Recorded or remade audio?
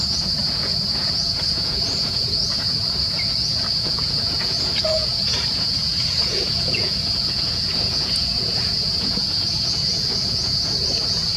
remade